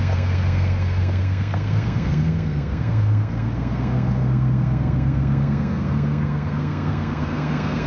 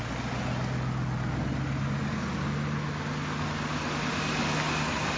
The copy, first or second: first